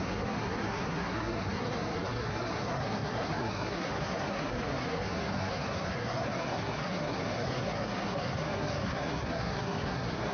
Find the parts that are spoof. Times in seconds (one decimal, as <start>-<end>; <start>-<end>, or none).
0.0-10.3